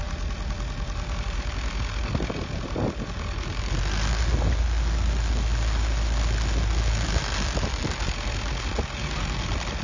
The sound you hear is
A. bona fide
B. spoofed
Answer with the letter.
A